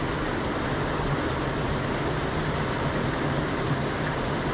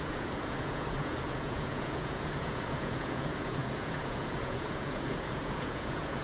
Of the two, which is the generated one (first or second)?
second